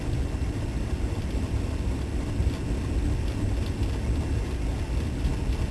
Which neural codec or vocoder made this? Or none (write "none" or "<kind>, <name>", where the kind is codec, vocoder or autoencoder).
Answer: none